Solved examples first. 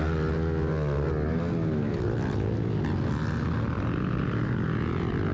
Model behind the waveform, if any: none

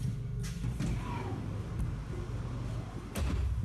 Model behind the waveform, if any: none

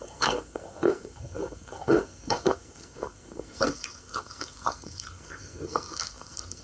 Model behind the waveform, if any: codec, SNAC